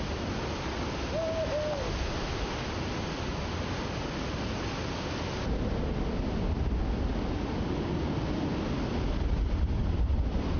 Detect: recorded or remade recorded